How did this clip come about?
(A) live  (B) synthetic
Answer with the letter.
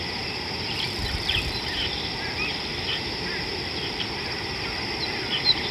B